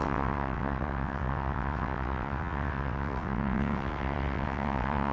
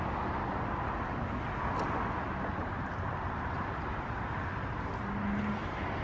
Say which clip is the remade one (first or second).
first